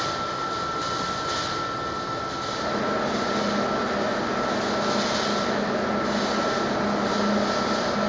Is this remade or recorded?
recorded